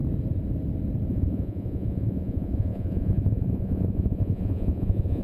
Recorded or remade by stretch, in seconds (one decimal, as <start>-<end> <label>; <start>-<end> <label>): 0.0-1.1 recorded; 1.1-5.2 remade